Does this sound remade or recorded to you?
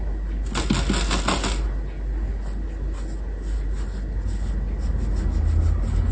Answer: recorded